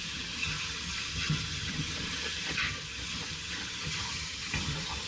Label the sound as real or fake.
fake